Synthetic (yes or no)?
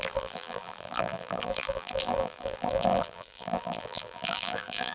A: yes